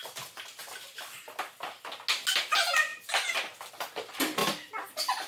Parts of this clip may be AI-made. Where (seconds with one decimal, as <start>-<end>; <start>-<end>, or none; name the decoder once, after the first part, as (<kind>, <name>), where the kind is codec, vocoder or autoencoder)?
none